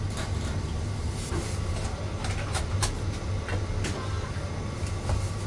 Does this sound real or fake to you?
real